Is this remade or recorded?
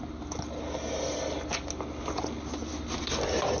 recorded